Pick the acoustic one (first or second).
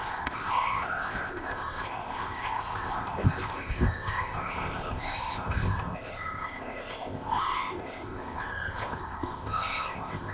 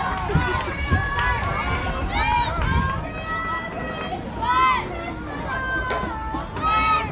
second